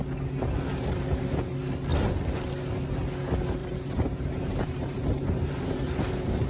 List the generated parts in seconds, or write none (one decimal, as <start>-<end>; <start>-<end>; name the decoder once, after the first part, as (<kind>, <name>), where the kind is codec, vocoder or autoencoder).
0.7-1.5 (vocoder, BigVGAN v2); 3.6-5.7